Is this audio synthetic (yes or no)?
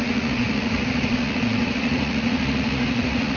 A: yes